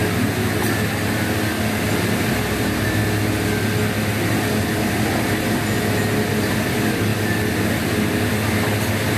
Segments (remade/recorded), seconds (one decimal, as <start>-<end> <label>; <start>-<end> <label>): 0.0-9.2 recorded